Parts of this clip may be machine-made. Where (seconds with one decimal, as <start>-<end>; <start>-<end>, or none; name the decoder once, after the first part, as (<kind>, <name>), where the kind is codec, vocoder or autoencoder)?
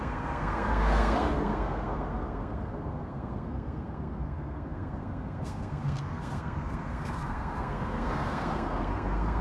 0.0-9.4 (codec, SNAC)